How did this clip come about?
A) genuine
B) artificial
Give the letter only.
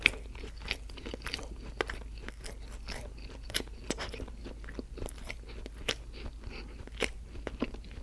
A